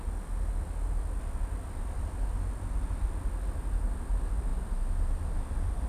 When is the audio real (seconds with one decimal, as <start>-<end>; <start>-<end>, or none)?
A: 0.0-5.9